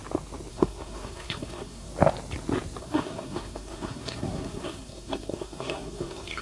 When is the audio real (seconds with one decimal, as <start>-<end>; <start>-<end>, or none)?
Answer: 0.0-0.5; 1.9-2.8